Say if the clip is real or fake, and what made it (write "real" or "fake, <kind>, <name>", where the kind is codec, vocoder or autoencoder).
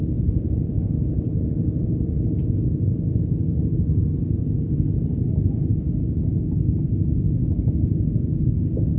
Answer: real